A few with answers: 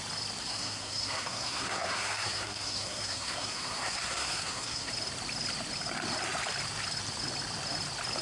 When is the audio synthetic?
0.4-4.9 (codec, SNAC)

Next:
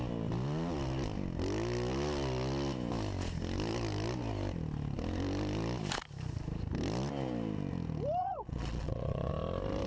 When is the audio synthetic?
8.2-9.3 (vocoder, Vocos)

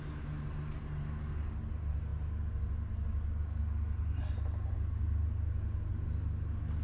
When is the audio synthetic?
none

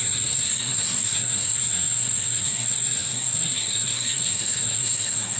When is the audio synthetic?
0.0-5.4 (codec, SNAC)

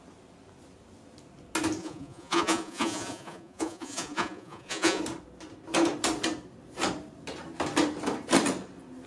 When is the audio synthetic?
1.8-5.0 (vocoder, Vocos)